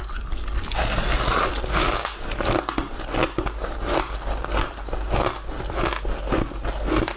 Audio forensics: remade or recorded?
recorded